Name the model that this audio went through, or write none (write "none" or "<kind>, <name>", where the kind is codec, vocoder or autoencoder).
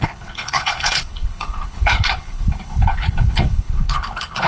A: codec, HILCodec